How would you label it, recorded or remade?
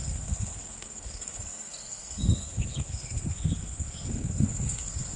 remade